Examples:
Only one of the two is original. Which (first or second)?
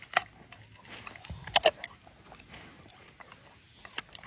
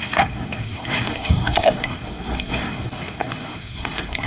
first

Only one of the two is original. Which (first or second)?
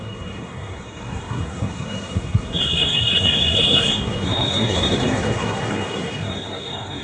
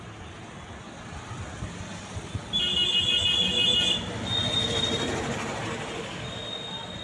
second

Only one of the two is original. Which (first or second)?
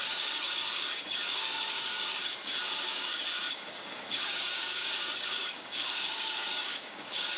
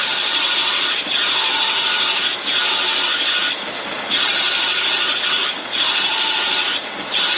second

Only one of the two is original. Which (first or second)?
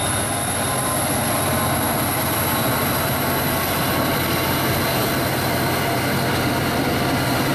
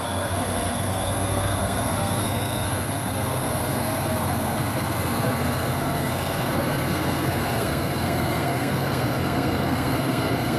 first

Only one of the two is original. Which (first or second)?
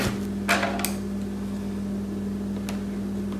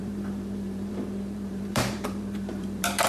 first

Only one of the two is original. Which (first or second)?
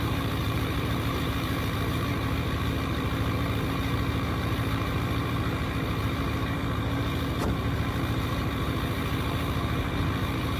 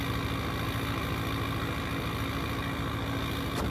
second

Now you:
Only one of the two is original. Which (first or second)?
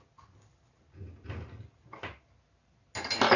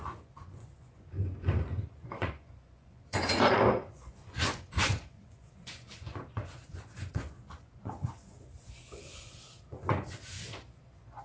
first